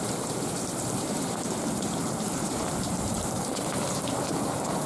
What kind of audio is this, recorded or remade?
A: remade